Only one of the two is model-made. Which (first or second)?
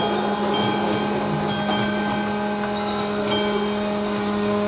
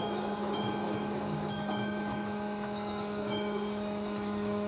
second